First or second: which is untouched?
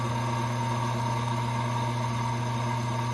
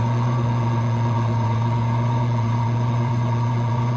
first